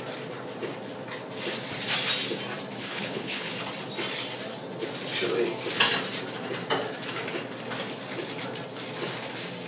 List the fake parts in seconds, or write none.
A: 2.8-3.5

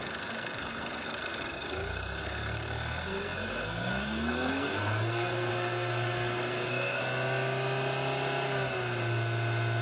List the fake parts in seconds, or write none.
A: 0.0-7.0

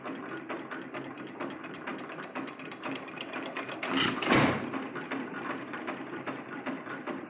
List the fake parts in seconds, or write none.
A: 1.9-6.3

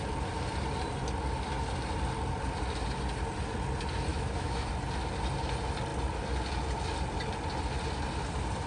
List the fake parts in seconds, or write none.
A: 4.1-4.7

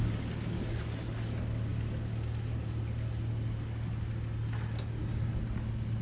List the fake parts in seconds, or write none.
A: none

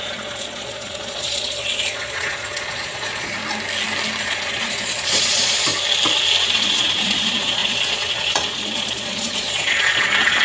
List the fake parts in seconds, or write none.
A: 0.0-3.4; 4.2-5.7; 6.4-10.4

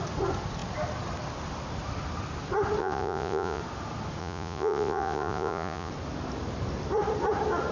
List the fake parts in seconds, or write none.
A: 2.8-3.6; 4.2-5.9